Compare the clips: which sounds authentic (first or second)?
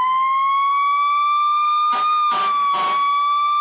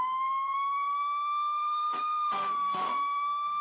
first